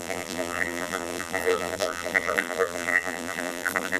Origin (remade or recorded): remade